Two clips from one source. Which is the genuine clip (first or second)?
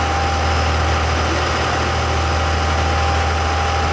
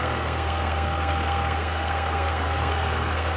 first